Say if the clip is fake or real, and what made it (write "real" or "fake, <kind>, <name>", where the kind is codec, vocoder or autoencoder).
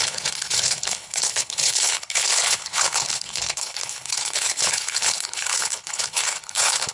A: fake, codec, HILCodec